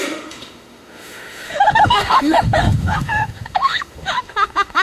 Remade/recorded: remade